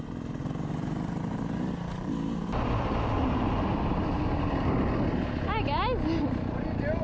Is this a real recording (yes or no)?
yes